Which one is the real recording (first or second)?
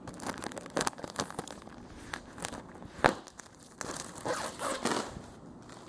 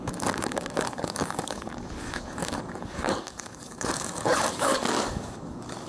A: first